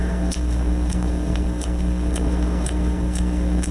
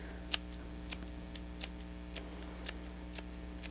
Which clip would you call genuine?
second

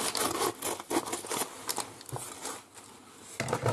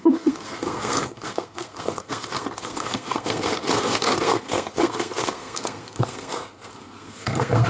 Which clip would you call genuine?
first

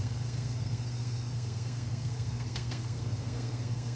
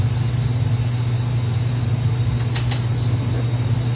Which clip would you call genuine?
second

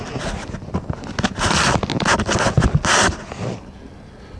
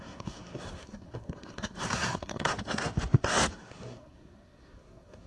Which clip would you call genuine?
first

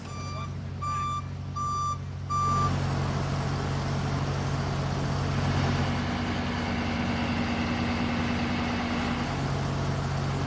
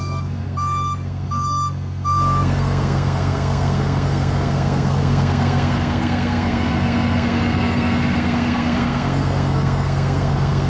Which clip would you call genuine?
first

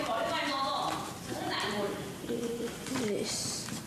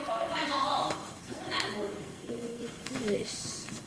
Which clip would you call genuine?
first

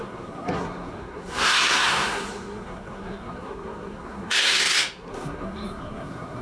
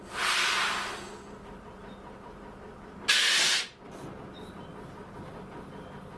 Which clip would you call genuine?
second